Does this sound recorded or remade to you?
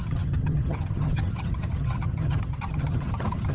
remade